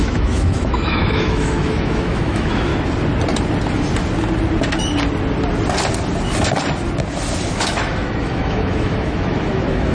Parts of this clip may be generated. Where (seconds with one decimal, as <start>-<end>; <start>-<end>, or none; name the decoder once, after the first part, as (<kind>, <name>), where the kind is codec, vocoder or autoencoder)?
0.0-2.7 (autoencoder, DAC-VAE); 7.5-9.9

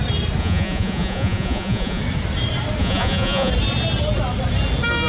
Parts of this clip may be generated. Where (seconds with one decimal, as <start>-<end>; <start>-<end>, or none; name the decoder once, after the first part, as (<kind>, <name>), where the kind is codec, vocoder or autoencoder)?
0.4-2.0 (vocoder, Vocos); 2.8-3.5

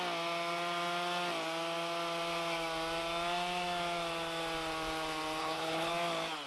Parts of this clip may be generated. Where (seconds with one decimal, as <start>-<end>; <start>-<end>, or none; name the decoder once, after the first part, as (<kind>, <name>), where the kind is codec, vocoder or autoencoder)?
5.4-5.9 (codec, HILCodec)

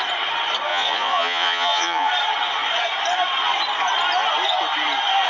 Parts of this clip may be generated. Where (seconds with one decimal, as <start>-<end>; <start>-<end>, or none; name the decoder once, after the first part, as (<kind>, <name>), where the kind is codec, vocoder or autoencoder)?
0.7-2.1 (vocoder, Vocos)

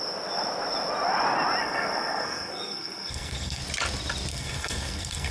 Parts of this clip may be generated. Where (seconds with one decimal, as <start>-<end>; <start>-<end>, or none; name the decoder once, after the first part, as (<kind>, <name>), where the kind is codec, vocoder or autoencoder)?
1.6-3.6 (codec, SNAC); 4.3-5.3

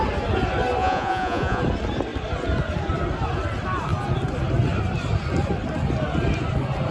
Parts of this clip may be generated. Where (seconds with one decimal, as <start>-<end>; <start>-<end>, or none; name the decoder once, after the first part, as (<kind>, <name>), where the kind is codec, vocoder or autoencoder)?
0.8-1.6 (vocoder, Vocos)

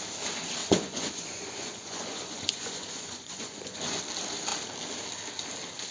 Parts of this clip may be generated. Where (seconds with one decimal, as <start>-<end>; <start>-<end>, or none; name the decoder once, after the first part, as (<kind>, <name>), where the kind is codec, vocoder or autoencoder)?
0.6-4.0 (vocoder, Vocos)

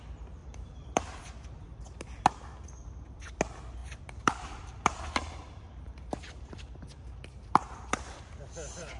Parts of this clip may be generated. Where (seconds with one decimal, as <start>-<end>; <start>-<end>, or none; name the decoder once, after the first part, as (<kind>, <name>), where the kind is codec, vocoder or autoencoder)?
0.4-2.2 (vocoder, BigVGAN v2); 3.8-8.2